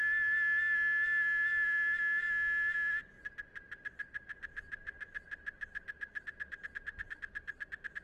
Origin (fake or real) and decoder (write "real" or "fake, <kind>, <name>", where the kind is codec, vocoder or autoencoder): real